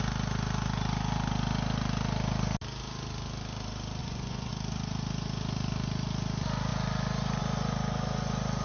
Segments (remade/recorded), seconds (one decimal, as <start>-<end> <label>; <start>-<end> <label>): 0.0-4.0 recorded; 4.0-4.5 remade; 4.5-8.6 recorded